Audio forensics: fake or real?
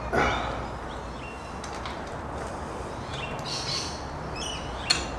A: real